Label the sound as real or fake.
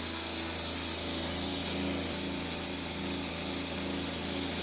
real